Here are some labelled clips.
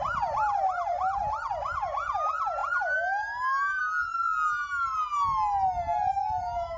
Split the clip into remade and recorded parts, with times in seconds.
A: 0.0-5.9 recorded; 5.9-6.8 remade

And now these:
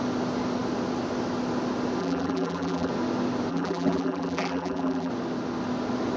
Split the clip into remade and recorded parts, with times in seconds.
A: 0.0-2.0 recorded; 2.0-2.9 remade; 2.9-3.5 recorded; 3.5-5.1 remade; 5.1-6.2 recorded

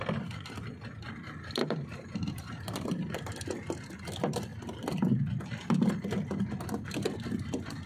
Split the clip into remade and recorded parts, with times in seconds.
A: 0.0-1.6 recorded; 1.6-3.3 remade; 3.3-7.9 recorded

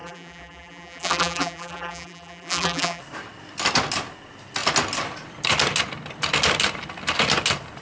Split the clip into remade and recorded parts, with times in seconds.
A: 0.0-3.0 remade; 3.0-7.8 recorded

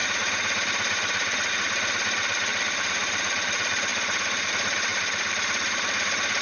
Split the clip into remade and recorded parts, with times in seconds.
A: 0.0-2.5 recorded; 2.5-3.5 remade; 3.5-3.9 recorded; 3.9-4.5 remade; 4.5-4.9 recorded; 4.9-5.8 remade; 5.8-6.4 recorded